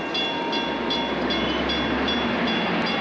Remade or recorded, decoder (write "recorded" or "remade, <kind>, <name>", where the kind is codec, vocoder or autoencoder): recorded